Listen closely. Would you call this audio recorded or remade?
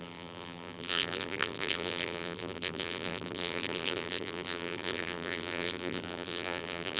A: remade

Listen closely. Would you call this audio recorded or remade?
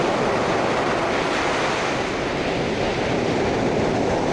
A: recorded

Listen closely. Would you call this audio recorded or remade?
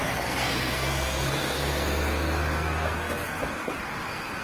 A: remade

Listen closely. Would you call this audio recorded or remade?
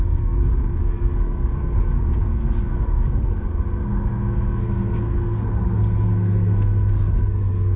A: remade